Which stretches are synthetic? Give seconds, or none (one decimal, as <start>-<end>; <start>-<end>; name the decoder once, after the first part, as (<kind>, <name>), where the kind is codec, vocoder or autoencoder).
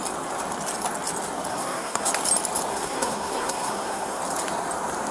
1.5-2.1 (codec, SNAC); 2.7-4.2